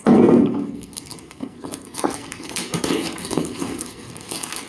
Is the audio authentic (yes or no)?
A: no